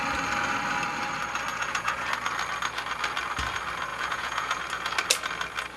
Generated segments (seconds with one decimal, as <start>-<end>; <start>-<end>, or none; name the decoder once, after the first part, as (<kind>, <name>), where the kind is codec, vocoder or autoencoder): 1.5-2.1 (vocoder, Vocos); 3.9-4.6